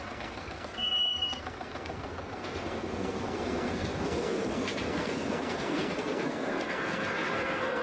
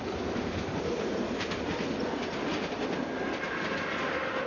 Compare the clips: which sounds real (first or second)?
second